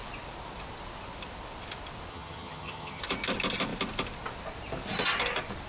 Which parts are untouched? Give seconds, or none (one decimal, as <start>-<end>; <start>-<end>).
0.0-2.1; 3.0-5.7